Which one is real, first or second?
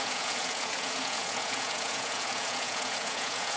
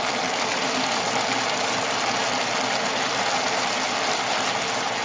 second